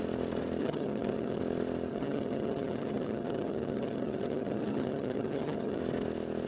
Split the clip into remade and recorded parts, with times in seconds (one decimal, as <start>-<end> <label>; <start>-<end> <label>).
0.0-0.6 recorded; 0.6-1.4 remade; 1.4-1.9 recorded; 1.9-5.8 remade; 5.8-6.5 recorded